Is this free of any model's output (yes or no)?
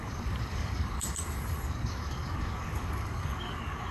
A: no